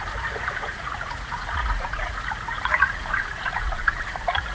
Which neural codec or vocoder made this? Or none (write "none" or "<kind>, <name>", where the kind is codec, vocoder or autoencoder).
vocoder, Vocos